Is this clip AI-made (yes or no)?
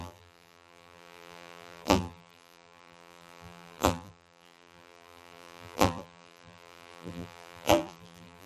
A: yes